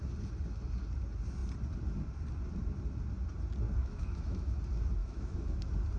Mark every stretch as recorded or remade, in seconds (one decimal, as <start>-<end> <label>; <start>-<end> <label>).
0.0-3.8 recorded; 3.8-4.6 remade; 4.6-5.0 recorded; 5.0-5.5 remade; 5.5-6.0 recorded